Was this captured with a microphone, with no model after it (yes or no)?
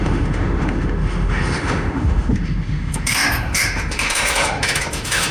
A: no